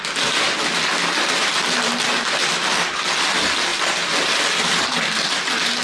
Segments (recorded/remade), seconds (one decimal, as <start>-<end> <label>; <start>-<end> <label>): 0.0-5.8 recorded